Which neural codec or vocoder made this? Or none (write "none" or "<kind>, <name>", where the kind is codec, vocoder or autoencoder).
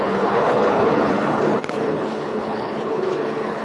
codec, HILCodec